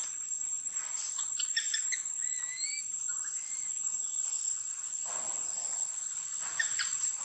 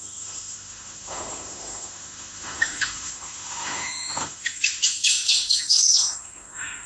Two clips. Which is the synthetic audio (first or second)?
second